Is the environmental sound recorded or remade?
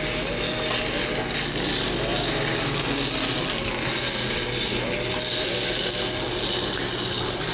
recorded